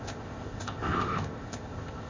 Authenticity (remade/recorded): remade